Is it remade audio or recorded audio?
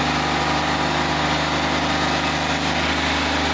recorded